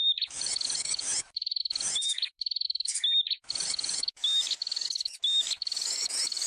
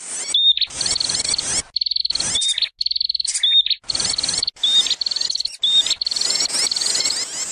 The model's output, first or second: first